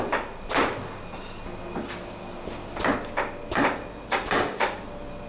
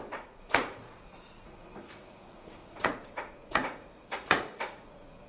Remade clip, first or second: second